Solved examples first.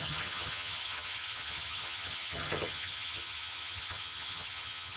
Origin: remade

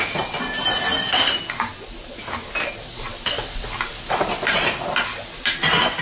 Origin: recorded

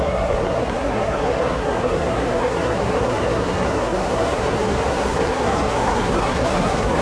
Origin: remade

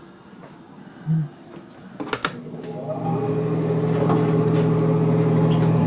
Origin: recorded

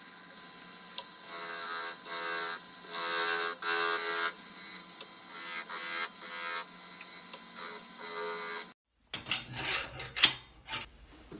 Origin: recorded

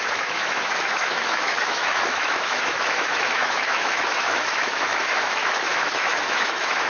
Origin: remade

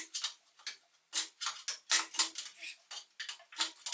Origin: recorded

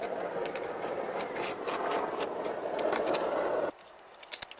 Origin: recorded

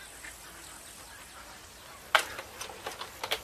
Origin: recorded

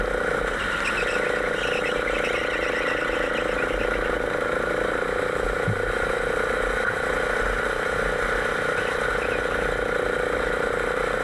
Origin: recorded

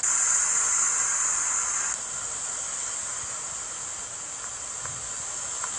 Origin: recorded